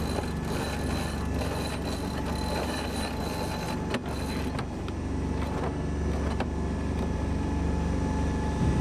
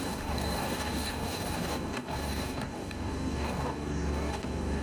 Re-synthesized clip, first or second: second